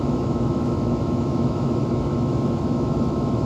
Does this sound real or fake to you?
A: fake